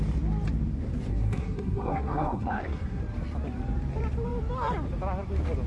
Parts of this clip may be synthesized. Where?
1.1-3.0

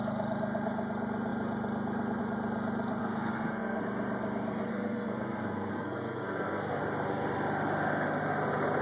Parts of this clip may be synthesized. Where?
3.0-3.8; 4.7-6.8

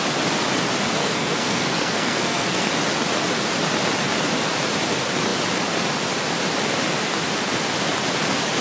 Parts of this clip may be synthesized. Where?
1.0-2.7

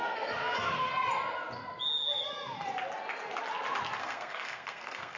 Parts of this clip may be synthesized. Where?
0.0-0.9; 4.0-5.2

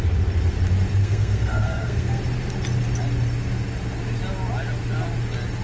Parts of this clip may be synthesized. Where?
1.0-2.2

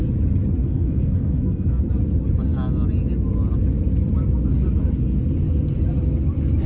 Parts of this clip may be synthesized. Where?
0.6-1.8

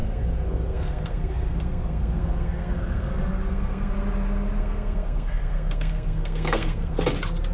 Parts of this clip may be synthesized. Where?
0.0-3.9; 4.6-7.0

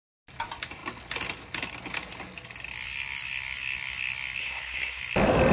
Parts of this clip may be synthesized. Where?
4.4-5.0